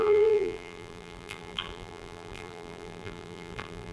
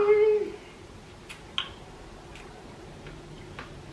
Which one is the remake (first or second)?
first